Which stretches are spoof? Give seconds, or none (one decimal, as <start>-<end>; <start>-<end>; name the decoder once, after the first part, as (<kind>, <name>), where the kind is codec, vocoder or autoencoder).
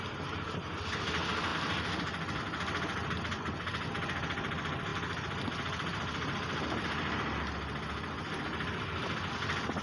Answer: none